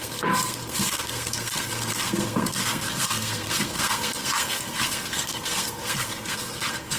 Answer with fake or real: fake